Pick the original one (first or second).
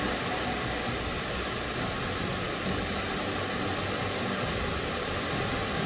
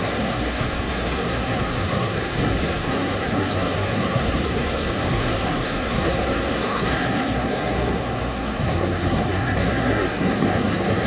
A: first